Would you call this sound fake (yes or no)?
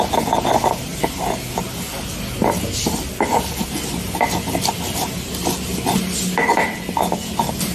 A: no